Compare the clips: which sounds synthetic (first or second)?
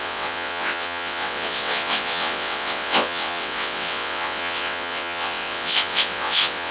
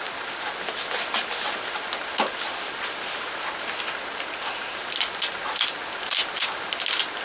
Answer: first